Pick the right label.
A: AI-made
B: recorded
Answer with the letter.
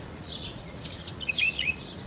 A